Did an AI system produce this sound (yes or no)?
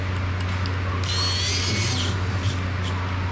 no